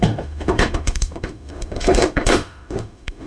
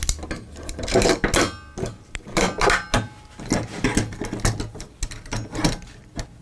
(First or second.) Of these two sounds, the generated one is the first